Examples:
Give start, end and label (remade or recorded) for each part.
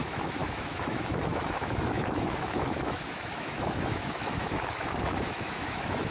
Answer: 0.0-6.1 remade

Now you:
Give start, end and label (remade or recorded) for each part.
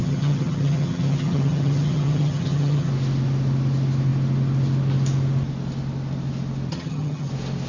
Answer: 0.0-2.9 remade; 2.9-6.7 recorded; 6.7-7.3 remade; 7.3-7.7 recorded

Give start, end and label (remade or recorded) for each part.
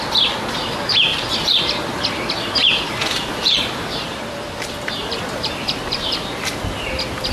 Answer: 0.0-1.1 recorded; 1.1-2.0 remade; 2.0-2.6 recorded; 2.6-6.5 remade; 6.5-7.3 recorded